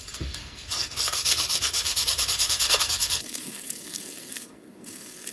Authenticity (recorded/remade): remade